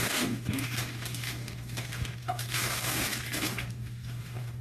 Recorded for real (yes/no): no